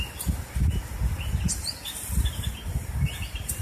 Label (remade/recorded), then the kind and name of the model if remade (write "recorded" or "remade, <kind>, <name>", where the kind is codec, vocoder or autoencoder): recorded